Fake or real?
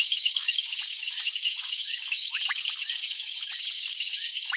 fake